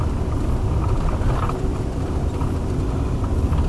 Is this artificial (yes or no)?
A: no